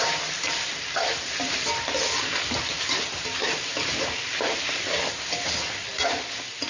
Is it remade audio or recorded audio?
recorded